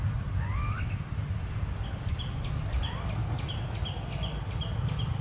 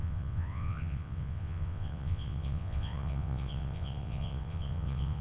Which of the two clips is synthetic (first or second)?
second